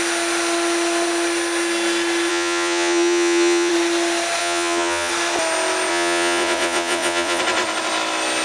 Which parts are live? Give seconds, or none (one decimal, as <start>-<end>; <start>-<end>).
0.0-2.3; 3.7-4.4; 5.1-5.9; 7.4-8.4